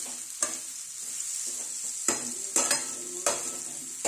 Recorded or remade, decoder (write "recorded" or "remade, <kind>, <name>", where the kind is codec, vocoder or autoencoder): recorded